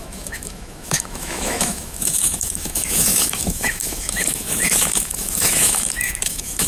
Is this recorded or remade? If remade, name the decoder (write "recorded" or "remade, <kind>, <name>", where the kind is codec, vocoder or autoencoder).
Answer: remade, autoencoder, DAC-VAE